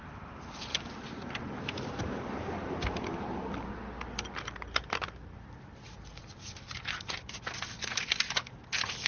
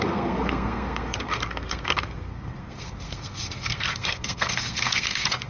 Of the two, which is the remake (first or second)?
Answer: second